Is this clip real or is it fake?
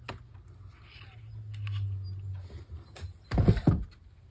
real